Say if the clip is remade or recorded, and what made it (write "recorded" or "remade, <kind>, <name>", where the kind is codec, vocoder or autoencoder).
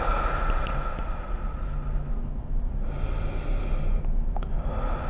recorded